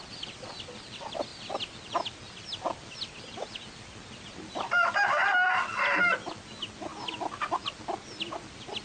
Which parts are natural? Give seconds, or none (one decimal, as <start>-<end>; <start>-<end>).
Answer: 0.0-8.8